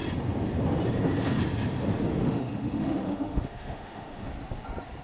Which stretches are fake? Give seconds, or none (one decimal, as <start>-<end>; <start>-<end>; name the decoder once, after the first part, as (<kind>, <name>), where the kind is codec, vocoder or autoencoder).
2.1-4.3 (autoencoder, DAC-VAE)